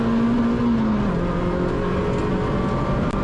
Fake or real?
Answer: real